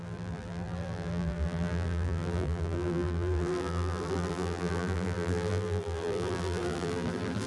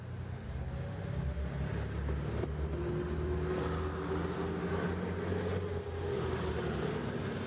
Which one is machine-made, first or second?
first